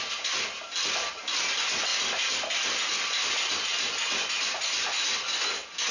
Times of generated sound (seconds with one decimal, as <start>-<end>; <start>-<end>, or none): 0.0-1.9; 2.8-5.9